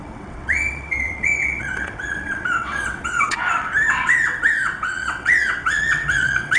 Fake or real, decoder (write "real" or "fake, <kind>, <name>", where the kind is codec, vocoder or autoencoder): fake, vocoder, WaveNeXt